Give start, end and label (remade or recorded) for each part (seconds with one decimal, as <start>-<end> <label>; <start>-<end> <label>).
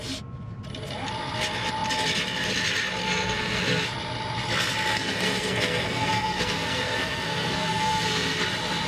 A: 0.0-3.0 recorded; 3.0-3.6 remade; 3.6-4.9 recorded; 4.9-8.4 remade; 8.4-8.9 recorded